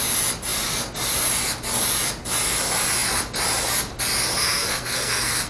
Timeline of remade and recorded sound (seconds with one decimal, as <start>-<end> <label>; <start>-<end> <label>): 0.0-4.4 recorded; 4.4-5.5 remade